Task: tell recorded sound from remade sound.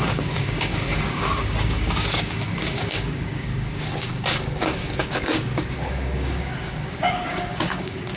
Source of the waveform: remade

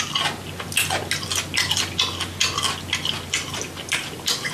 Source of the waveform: recorded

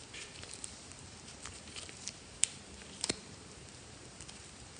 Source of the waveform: remade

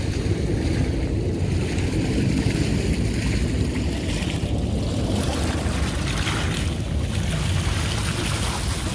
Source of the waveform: recorded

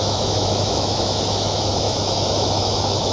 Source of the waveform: remade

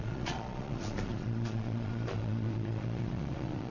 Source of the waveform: remade